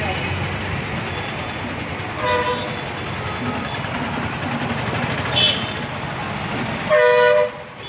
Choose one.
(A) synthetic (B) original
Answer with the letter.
B